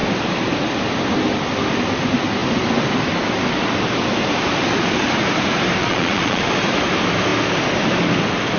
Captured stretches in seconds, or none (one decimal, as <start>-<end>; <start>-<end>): 0.0-5.8; 6.4-8.6